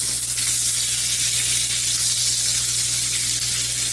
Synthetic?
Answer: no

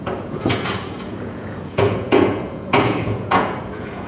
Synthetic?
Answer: yes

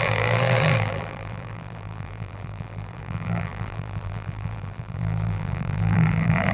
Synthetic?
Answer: yes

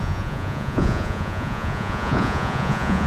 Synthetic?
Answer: yes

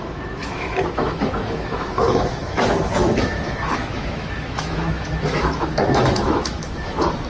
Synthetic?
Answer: yes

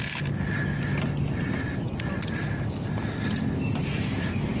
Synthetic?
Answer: yes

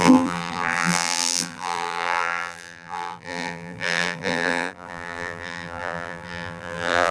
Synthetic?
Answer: yes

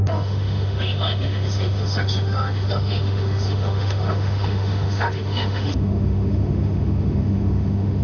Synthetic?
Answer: yes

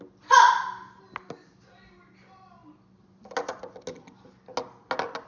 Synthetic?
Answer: no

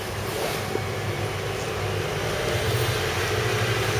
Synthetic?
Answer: no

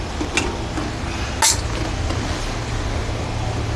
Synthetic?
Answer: no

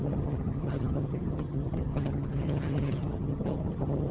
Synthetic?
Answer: yes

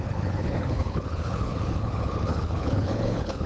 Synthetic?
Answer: yes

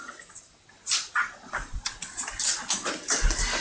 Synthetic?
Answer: no